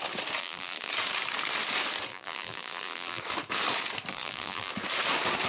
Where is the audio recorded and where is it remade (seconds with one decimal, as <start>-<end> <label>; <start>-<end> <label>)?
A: 0.0-0.4 recorded; 0.4-0.9 remade; 0.9-2.1 recorded; 2.1-3.2 remade; 3.2-4.1 recorded; 4.1-4.7 remade; 4.7-5.5 recorded